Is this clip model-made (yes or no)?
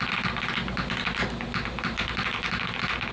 no